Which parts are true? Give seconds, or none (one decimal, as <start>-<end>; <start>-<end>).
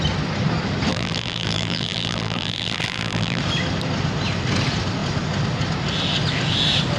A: 0.0-0.9; 3.4-7.0